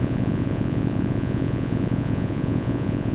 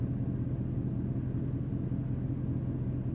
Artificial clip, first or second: first